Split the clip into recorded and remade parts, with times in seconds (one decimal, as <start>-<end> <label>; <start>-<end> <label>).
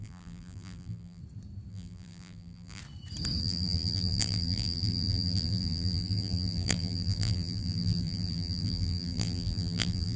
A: 0.0-1.2 remade; 1.2-1.7 recorded; 1.7-2.8 remade; 2.8-3.4 recorded; 3.4-10.2 remade